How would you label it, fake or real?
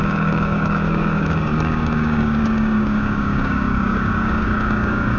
fake